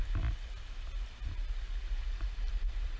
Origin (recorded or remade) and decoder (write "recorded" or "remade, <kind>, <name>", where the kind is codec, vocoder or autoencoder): recorded